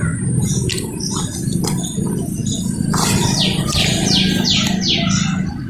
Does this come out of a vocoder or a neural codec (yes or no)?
no